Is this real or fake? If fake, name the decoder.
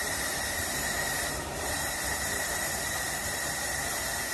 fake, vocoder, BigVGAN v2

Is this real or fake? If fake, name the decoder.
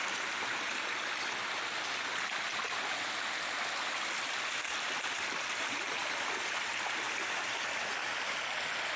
real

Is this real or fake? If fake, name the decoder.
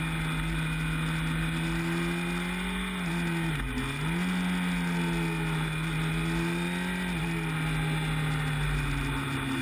real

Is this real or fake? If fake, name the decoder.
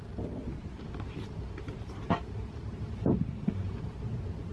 fake, vocoder, BigVGAN v2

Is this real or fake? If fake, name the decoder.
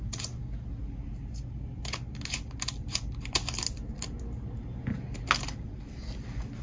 real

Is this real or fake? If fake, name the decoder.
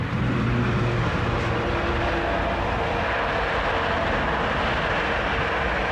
real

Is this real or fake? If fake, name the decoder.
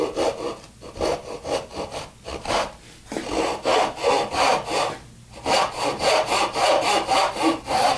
real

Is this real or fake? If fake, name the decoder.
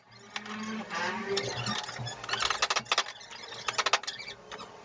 real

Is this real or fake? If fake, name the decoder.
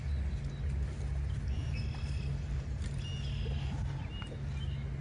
real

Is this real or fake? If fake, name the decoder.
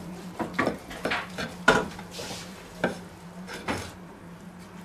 fake, vocoder, BigVGAN v2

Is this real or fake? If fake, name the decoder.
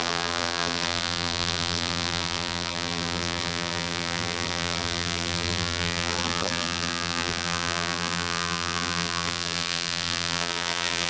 fake, vocoder, BigVGAN v2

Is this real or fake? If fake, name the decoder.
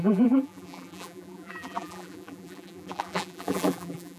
fake, vocoder, BigVGAN v2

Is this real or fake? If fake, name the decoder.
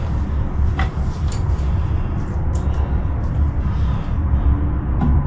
fake, vocoder, BigVGAN v2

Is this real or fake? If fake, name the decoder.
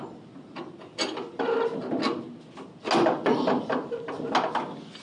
real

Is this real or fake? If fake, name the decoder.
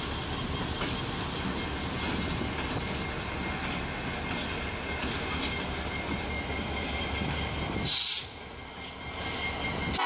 real